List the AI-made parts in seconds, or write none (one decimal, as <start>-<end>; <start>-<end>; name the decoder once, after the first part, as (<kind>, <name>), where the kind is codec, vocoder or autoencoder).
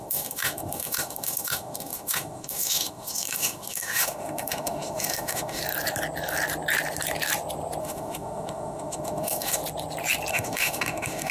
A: 0.0-5.6 (autoencoder, DAC-VAE); 7.8-9.6; 10.3-11.3